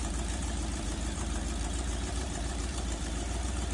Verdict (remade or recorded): remade